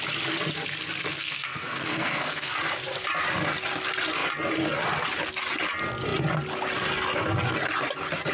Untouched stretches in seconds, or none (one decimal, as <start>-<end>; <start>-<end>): 0.0-1.1; 2.5-8.3